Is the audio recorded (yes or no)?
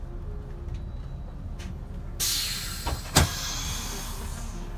yes